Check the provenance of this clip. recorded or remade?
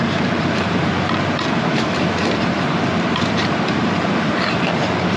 remade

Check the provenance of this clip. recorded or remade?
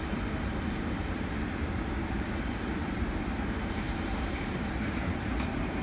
remade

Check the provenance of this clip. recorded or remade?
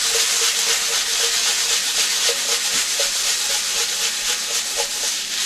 recorded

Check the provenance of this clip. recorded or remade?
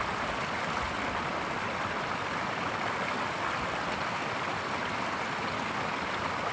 recorded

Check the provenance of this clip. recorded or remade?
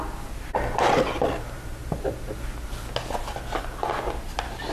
recorded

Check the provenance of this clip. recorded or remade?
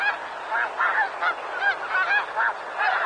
recorded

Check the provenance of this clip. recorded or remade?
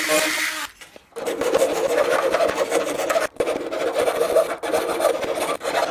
recorded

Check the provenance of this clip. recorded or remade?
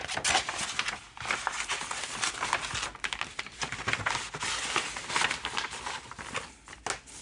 recorded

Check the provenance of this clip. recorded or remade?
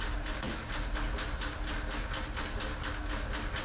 recorded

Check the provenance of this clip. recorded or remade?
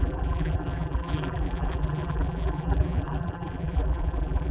remade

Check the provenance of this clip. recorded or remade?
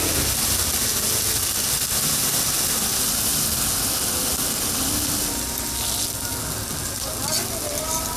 recorded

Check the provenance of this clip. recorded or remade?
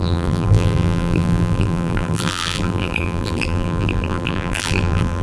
remade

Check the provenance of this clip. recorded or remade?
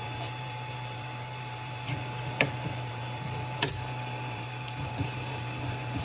remade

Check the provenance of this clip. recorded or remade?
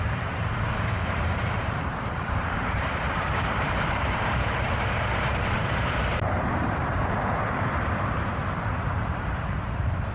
remade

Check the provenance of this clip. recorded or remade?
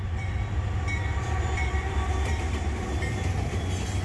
remade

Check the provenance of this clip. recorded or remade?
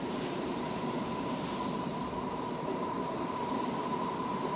remade